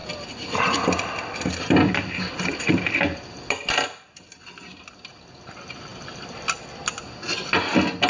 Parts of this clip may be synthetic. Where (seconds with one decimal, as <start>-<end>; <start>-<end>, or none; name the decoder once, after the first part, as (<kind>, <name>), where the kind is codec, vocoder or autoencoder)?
0.0-4.9 (vocoder, BigVGAN v2); 5.9-6.9